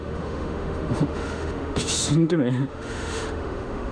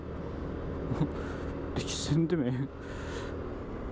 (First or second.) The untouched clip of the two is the second